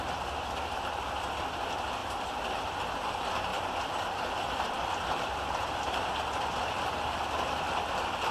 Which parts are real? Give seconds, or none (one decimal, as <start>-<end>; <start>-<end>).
0.0-3.5; 6.1-8.3